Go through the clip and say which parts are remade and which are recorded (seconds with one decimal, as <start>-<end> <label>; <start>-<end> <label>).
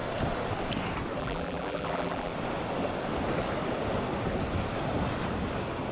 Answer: 0.0-1.2 recorded; 1.2-2.3 remade; 2.3-5.9 recorded